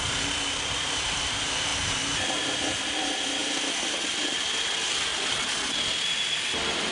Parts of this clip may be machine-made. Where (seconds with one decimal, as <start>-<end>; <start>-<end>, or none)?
0.0-5.1; 6.1-6.9